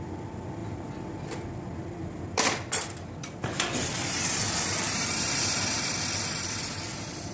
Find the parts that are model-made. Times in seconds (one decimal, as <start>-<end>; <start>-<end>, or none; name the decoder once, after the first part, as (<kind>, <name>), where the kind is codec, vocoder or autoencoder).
0.0-7.3 (vocoder, BigVGAN v2)